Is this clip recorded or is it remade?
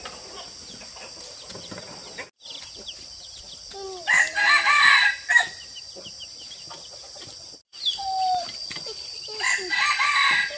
recorded